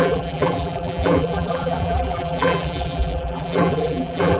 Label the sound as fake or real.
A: fake